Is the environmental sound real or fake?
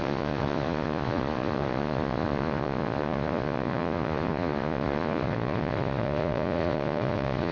fake